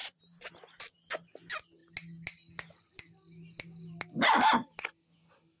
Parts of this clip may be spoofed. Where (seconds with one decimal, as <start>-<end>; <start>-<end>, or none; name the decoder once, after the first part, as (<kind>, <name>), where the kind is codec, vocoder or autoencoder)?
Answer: 0.0-0.5 (vocoder, BigVGAN v2)